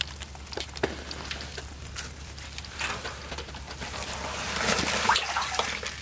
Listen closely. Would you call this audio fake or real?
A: real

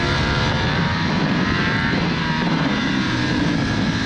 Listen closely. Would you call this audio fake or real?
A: fake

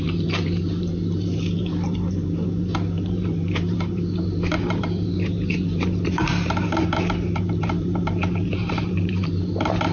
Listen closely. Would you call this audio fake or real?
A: fake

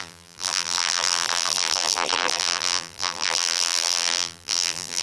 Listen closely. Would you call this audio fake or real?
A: fake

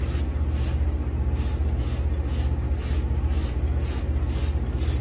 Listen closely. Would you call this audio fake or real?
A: real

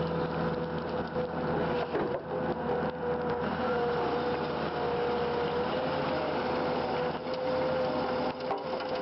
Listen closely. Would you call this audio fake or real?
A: real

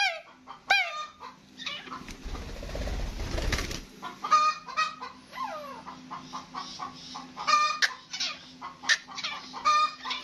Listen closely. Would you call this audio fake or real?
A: real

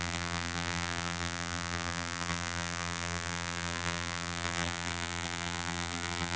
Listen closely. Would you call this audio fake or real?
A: fake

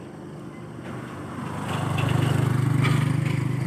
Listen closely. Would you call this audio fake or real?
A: real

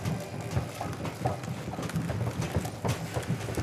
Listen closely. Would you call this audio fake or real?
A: real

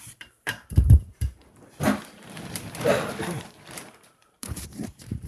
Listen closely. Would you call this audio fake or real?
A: fake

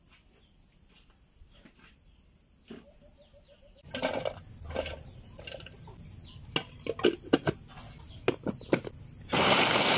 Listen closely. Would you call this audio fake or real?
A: real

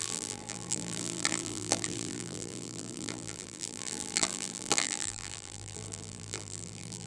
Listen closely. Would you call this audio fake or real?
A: fake